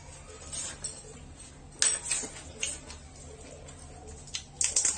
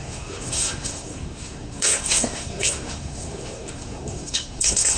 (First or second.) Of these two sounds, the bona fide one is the first